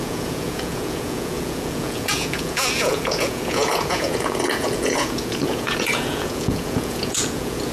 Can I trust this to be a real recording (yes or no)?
no